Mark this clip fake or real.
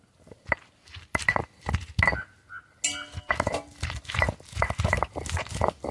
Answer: real